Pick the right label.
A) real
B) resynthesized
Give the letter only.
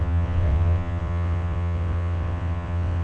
B